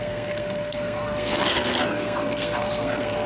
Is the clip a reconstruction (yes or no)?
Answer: yes